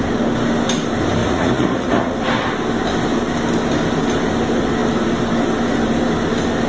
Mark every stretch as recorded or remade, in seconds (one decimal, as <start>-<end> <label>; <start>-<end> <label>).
0.0-1.2 recorded; 1.2-2.1 remade; 2.1-6.7 recorded